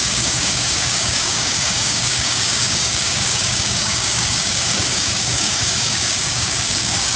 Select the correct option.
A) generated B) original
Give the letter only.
A